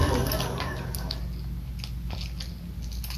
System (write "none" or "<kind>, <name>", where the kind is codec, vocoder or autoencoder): none